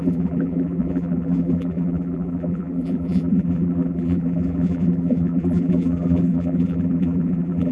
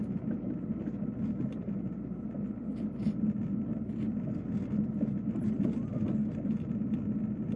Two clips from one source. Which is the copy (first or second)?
first